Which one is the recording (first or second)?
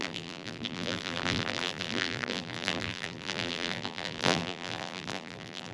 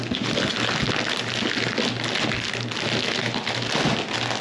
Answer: second